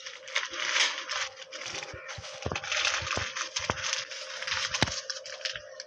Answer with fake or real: real